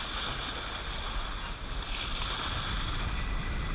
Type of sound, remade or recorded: recorded